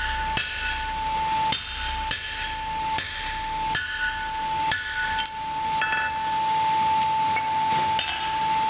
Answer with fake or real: real